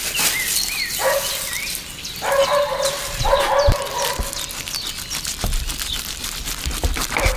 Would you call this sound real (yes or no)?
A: yes